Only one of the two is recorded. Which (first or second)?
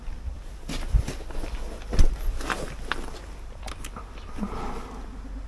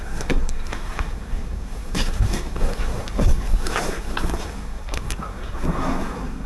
first